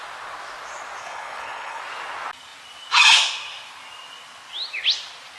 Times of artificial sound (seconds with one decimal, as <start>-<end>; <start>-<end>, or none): 1.0-1.8